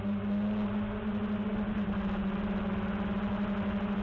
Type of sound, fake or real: real